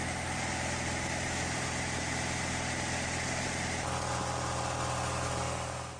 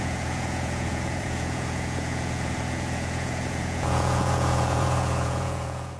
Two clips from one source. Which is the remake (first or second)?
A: second